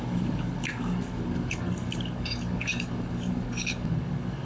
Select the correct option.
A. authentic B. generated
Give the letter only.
B